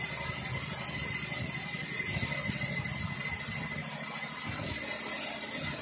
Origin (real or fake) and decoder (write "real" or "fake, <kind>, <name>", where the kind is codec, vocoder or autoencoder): real